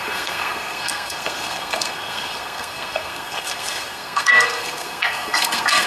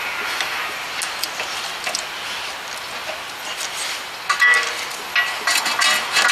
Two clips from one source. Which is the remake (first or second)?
first